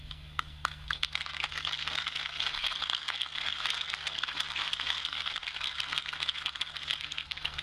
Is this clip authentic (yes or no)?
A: no